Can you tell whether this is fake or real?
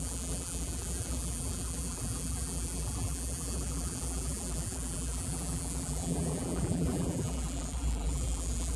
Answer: fake